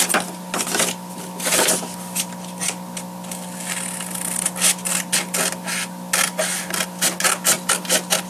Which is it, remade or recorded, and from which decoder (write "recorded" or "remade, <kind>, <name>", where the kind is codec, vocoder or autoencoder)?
recorded